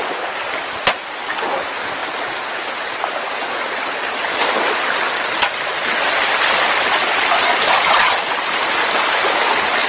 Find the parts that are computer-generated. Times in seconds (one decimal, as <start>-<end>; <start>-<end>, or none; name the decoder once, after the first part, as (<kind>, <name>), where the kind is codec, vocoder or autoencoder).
none